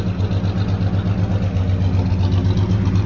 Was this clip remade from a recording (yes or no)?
no